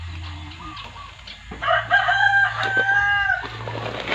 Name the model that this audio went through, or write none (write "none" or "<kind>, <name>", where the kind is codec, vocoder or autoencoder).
none